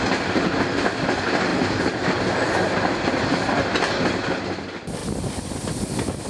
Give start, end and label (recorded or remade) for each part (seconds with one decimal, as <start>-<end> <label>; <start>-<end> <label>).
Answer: 0.0-6.3 recorded

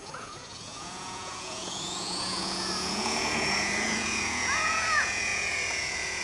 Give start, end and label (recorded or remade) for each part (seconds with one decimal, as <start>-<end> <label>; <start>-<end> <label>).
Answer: 0.0-6.2 remade

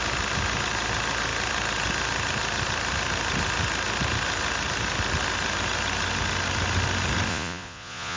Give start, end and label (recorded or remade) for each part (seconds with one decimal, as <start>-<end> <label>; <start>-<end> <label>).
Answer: 0.0-7.3 recorded; 7.3-8.2 remade

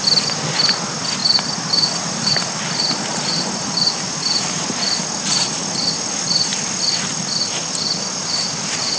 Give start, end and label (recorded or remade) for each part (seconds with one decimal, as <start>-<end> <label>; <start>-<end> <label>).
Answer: 0.0-9.0 recorded

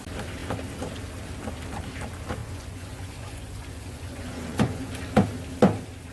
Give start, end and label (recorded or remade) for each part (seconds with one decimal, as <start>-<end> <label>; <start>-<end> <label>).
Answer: 0.0-2.4 recorded; 2.4-4.9 remade; 4.9-6.1 recorded

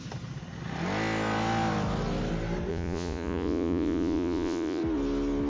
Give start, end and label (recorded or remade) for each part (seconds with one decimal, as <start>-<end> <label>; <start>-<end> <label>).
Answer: 0.0-2.7 recorded; 2.7-4.8 remade; 4.8-5.5 recorded

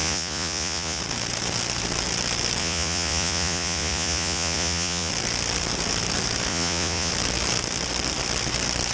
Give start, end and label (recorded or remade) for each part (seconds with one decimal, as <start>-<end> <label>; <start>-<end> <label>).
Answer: 0.0-1.0 remade; 1.0-2.6 recorded; 2.6-5.1 remade; 5.1-6.5 recorded; 6.5-7.1 remade; 7.1-8.9 recorded